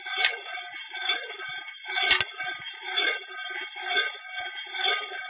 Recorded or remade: recorded